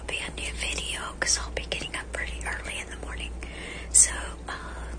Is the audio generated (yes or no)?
no